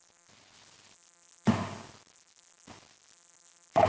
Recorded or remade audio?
recorded